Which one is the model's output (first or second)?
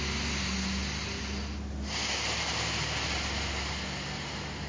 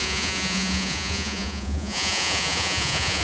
second